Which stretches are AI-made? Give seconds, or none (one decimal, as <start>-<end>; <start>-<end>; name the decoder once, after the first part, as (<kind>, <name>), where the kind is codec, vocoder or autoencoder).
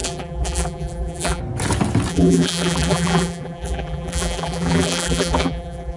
0.0-1.4 (vocoder, BigVGAN v2); 2.1-6.0